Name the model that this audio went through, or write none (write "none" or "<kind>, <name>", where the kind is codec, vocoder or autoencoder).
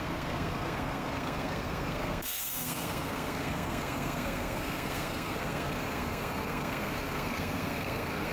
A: codec, SNAC